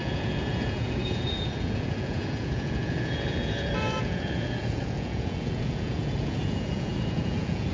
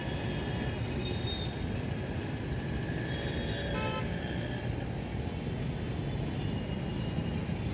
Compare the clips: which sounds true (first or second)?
second